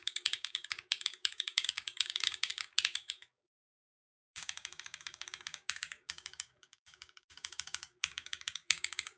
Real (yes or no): no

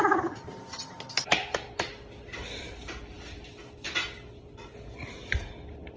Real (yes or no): yes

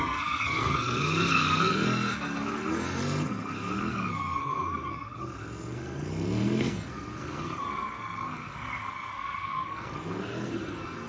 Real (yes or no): no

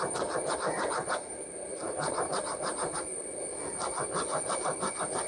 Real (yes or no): yes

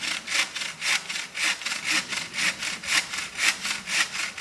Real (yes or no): yes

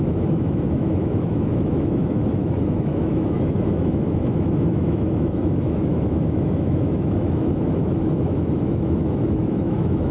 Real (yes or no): no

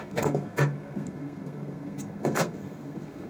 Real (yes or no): no